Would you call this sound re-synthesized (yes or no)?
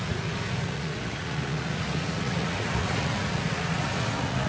yes